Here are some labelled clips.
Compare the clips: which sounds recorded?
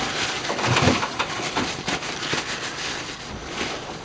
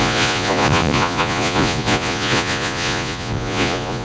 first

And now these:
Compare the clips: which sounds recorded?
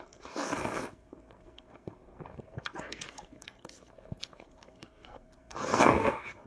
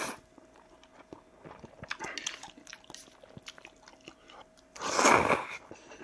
second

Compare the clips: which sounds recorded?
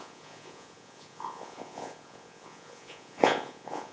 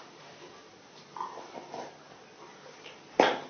second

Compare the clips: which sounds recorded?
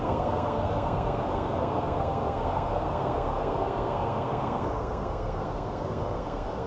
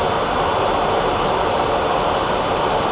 second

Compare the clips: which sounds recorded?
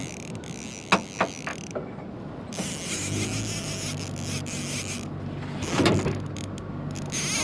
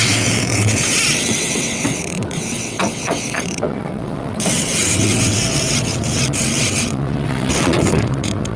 first